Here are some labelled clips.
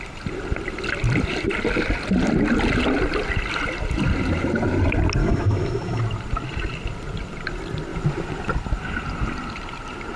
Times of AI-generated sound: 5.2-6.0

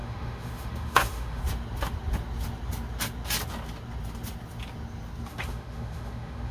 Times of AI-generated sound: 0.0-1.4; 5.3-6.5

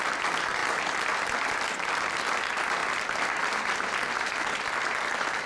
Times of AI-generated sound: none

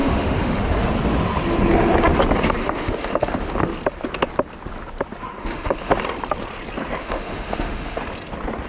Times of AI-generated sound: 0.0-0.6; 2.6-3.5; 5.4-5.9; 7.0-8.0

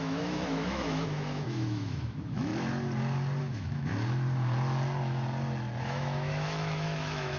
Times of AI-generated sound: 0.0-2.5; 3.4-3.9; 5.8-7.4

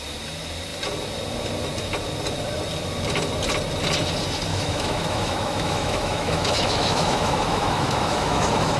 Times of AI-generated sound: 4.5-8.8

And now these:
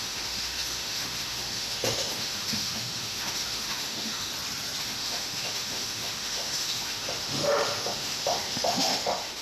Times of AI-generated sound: 0.0-4.3; 4.8-9.4

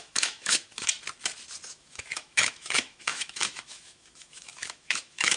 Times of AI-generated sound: 0.0-0.9; 1.7-5.4